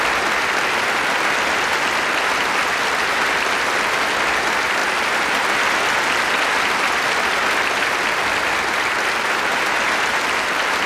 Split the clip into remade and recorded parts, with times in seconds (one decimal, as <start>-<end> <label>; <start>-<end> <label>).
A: 0.0-10.9 recorded